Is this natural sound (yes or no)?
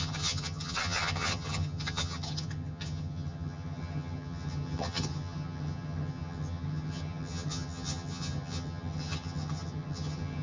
no